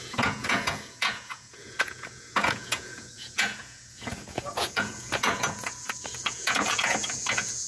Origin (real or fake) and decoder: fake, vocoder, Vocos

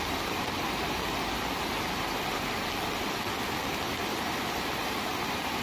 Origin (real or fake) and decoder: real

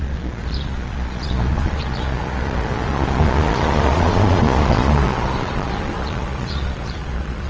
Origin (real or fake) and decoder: fake, vocoder, Vocos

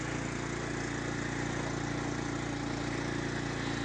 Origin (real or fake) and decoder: real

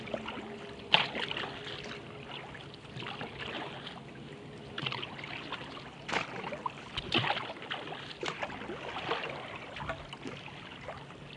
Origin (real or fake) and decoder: real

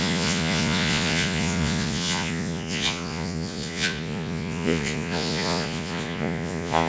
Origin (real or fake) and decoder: fake, vocoder, Vocos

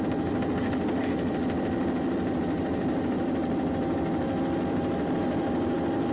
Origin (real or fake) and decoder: real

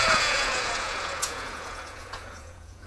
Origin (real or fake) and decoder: fake, vocoder, Vocos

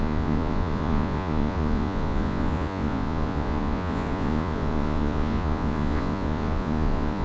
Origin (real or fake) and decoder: fake, vocoder, Vocos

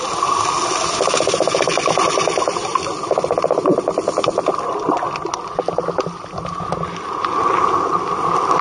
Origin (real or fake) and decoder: real